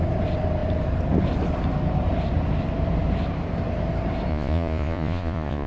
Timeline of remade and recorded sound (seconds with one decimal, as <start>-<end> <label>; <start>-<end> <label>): 0.0-4.3 recorded; 4.3-5.7 remade